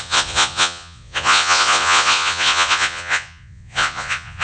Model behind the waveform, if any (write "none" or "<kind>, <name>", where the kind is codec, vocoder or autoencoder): vocoder, Vocos